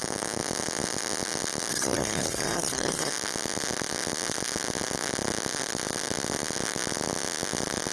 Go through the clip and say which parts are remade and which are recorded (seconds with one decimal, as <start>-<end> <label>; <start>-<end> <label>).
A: 0.0-1.7 recorded; 1.7-3.1 remade; 3.1-7.9 recorded